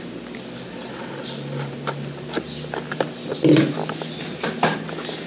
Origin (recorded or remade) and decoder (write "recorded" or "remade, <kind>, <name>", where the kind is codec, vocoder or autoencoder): recorded